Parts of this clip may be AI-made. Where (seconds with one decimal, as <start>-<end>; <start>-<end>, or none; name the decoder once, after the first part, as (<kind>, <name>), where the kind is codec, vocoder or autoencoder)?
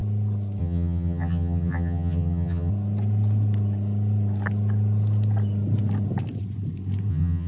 0.6-2.7 (vocoder, HiFi-GAN); 7.1-7.5